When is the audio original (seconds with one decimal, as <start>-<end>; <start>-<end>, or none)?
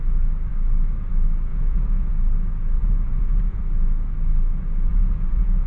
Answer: 0.0-1.5; 2.1-2.8; 3.6-4.9